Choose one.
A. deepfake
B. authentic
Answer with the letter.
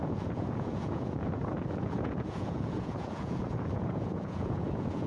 A